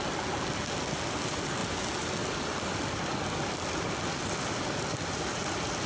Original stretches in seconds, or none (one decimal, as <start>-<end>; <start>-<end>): 0.0-5.9